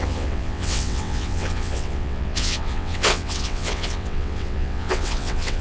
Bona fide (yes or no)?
no